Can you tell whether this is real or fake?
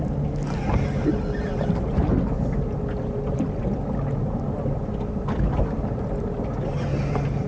real